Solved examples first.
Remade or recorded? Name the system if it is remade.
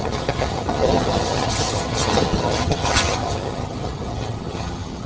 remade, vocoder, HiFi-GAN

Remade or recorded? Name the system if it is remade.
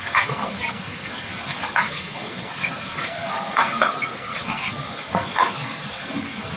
remade, codec, SNAC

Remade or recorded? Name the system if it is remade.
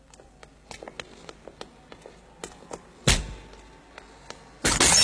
recorded